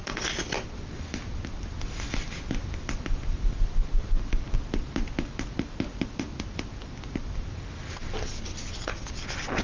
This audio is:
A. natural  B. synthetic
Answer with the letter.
A